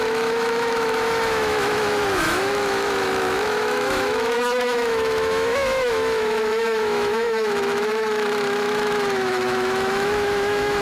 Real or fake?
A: fake